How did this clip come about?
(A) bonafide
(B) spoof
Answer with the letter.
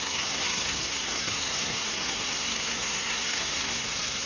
B